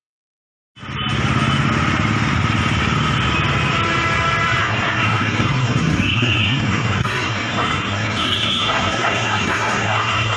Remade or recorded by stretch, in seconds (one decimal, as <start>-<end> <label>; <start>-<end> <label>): 0.0-0.4 remade; 0.4-4.6 recorded; 4.6-10.4 remade